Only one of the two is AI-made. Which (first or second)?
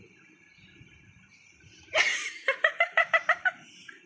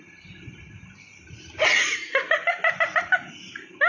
first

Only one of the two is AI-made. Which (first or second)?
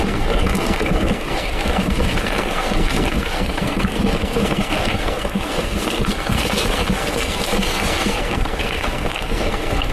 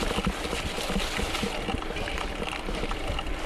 first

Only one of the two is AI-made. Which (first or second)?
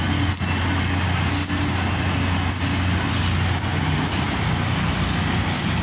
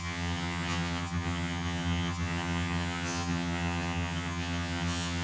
second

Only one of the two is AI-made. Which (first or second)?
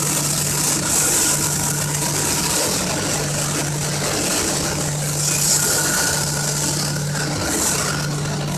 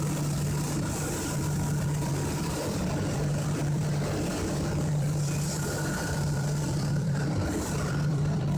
second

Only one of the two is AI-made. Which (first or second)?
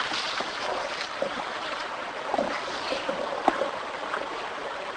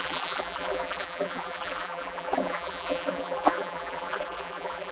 second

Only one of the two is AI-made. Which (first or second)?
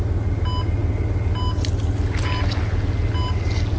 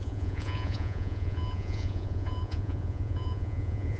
second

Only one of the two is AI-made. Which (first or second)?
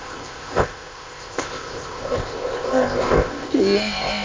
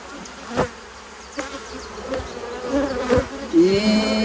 first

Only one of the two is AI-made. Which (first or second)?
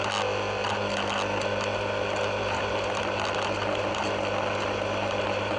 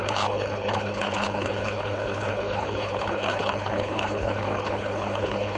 second